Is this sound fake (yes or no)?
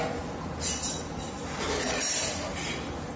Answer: no